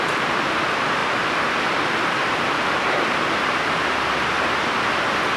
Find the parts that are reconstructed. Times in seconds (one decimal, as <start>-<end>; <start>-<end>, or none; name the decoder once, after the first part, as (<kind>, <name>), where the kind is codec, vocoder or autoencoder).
none